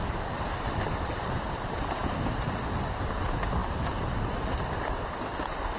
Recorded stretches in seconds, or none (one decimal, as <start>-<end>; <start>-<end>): 0.0-5.8